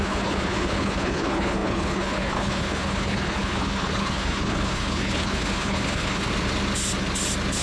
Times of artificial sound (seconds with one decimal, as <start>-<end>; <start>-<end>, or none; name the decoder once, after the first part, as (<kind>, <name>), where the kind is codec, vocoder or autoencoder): 0.0-6.3 (codec, HILCodec)